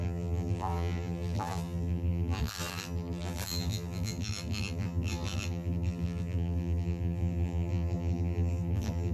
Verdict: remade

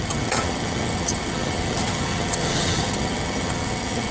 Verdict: remade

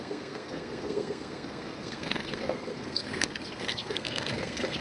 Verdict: remade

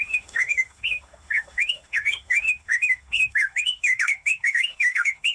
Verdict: remade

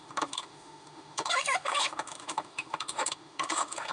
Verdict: remade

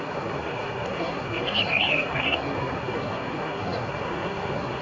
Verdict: remade